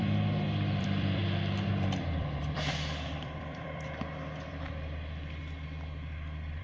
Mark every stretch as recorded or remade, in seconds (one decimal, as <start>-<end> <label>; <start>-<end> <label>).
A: 0.0-1.2 remade; 1.2-2.0 recorded; 2.0-5.4 remade; 5.4-6.6 recorded